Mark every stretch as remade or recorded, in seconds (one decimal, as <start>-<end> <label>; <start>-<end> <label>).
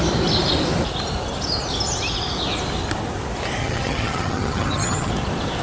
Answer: 0.0-3.6 recorded; 3.6-5.1 remade; 5.1-5.6 recorded